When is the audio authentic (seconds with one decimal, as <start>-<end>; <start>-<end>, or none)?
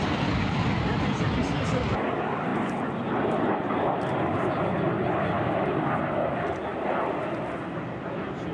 0.0-8.5